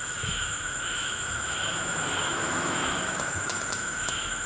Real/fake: fake